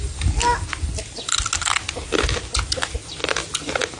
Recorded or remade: recorded